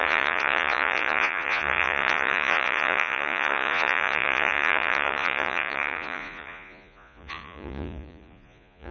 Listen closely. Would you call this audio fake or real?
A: fake